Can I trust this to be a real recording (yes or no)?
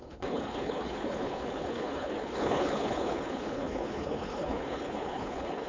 no